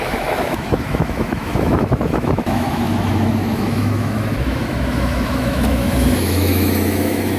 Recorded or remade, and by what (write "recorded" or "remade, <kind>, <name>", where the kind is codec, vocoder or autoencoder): remade, autoencoder, DAC-VAE